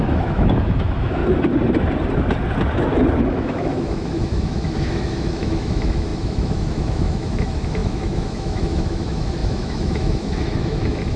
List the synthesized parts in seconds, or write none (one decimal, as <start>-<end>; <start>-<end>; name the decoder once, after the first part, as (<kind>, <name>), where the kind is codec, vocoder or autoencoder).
0.0-1.2 (autoencoder, DAC-VAE); 3.2-11.2